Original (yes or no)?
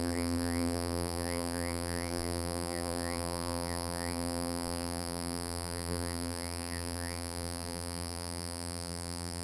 no